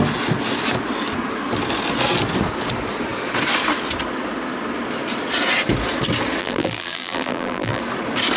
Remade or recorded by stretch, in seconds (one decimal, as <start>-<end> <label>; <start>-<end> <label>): 0.0-6.4 recorded; 6.4-7.8 remade; 7.8-8.4 recorded